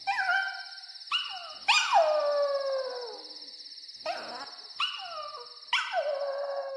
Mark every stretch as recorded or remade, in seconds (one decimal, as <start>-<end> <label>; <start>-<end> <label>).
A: 0.0-6.8 recorded